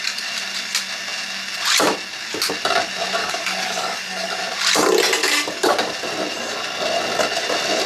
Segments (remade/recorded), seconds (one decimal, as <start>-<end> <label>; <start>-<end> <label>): 0.0-3.2 recorded; 3.2-4.4 remade; 4.4-5.2 recorded; 5.2-5.9 remade; 5.9-7.9 recorded